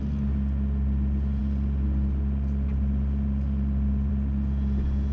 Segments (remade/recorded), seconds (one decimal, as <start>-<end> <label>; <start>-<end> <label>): 0.0-5.1 recorded